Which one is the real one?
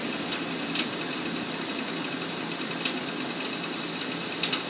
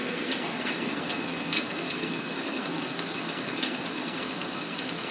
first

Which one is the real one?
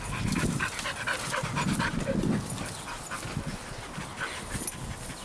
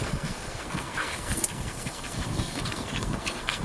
first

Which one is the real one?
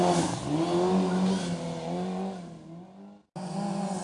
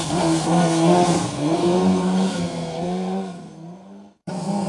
first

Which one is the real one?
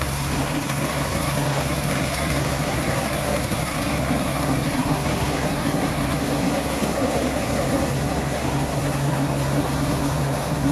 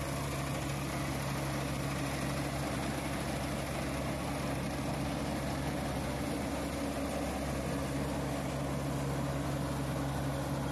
second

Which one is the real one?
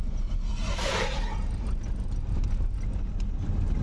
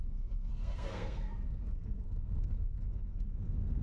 first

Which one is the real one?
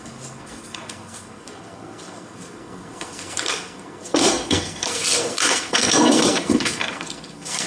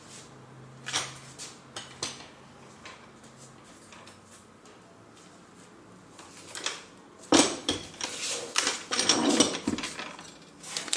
second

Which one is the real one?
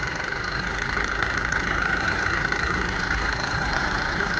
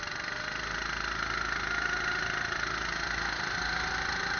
second